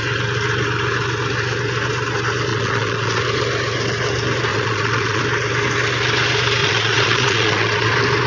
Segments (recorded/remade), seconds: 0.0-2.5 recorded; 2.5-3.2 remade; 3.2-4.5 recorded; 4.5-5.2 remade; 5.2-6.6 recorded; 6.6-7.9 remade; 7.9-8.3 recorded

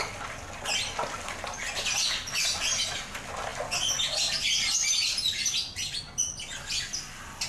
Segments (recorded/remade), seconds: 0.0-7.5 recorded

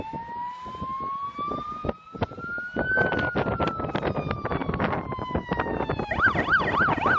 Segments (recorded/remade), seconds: 0.0-1.8 recorded; 1.8-2.4 remade; 2.4-4.6 recorded; 4.6-5.7 remade; 5.7-7.2 recorded

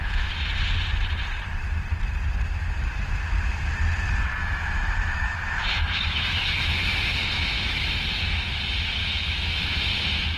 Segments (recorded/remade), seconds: 0.0-0.5 remade; 0.5-4.4 recorded; 4.4-6.6 remade; 6.6-7.2 recorded; 7.2-8.2 remade; 8.2-9.0 recorded; 9.0-9.6 remade; 9.6-10.4 recorded